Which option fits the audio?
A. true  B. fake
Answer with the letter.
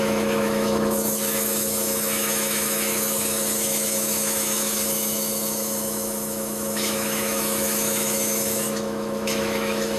B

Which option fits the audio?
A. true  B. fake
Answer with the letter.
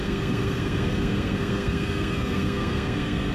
B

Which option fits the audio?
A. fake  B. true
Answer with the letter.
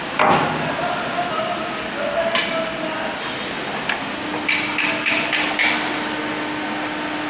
B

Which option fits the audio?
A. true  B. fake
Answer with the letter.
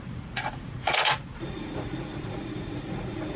B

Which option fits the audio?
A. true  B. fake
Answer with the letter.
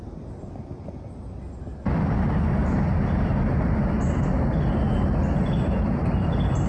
A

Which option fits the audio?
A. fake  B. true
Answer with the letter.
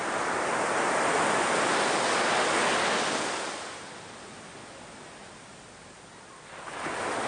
B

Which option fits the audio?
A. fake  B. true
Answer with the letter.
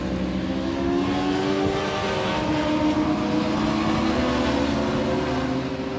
B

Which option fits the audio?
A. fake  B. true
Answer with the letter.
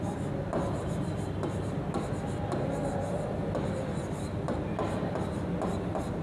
B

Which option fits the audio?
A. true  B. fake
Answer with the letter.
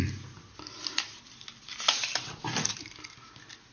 A